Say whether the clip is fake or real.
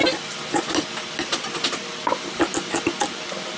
real